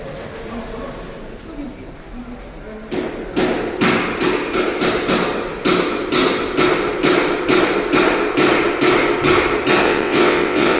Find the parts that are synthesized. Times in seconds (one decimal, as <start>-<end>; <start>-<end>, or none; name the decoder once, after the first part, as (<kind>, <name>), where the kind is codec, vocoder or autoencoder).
9.8-10.8 (vocoder, WaveNeXt)